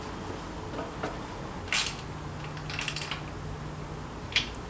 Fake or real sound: real